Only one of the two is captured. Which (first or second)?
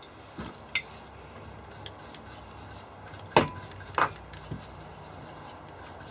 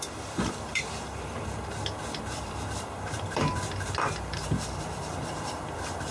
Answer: first